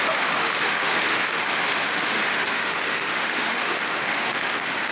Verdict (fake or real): fake